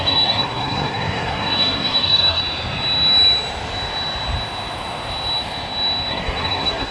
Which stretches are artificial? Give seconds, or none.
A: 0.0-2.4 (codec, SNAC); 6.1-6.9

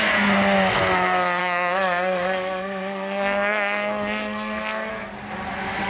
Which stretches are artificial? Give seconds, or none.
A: 1.4-4.9 (codec, SNAC)

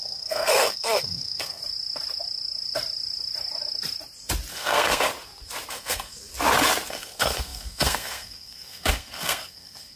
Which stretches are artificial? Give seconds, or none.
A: 0.0-1.6 (codec, SNAC); 4.5-5.1; 5.7-6.3; 6.9-10.0

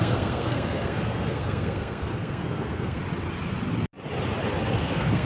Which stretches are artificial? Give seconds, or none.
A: 0.0-3.0 (codec, SNAC); 4.6-5.2

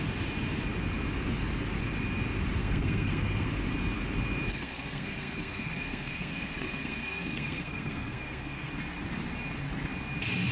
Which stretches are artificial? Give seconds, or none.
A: 2.6-3.5 (codec, SNAC); 4.5-8.7

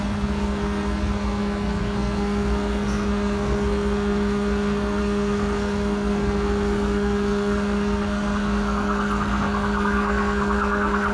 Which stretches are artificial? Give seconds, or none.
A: 0.0-11.1 (codec, SNAC)

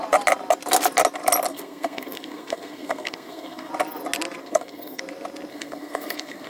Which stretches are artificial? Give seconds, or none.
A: 1.5-3.7 (codec, SNAC); 4.4-5.0; 5.5-6.5